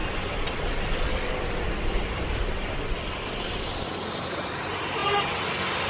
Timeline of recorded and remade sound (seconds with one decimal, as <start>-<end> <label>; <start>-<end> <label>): 0.0-5.9 recorded